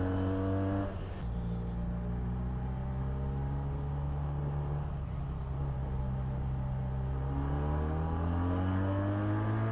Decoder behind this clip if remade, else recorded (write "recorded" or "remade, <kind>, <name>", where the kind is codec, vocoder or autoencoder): recorded